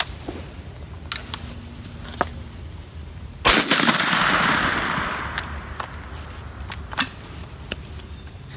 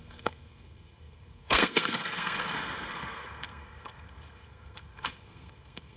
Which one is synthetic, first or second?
second